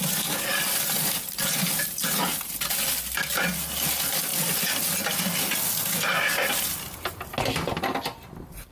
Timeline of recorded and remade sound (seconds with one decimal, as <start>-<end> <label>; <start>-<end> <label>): 0.0-8.7 recorded

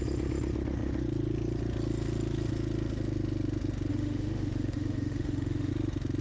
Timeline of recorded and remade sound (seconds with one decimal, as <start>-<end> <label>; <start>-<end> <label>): 0.0-3.9 recorded; 3.9-5.7 remade; 5.7-6.2 recorded

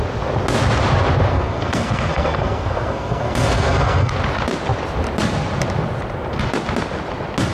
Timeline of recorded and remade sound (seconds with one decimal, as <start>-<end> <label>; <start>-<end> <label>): 0.0-1.3 recorded; 1.3-4.1 remade; 4.1-7.5 recorded

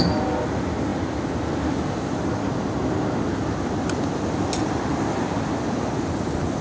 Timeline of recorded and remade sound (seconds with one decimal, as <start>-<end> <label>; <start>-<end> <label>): 0.0-6.6 recorded